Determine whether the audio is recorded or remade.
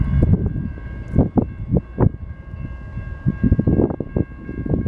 recorded